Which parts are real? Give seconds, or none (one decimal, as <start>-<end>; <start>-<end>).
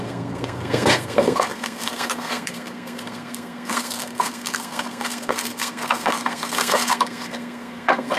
none